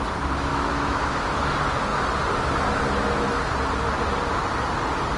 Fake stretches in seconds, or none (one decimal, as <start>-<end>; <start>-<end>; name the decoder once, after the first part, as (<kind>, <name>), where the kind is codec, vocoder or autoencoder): 0.5-1.5 (autoencoder, DAC-VAE)